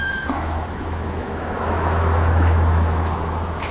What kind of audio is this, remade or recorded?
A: remade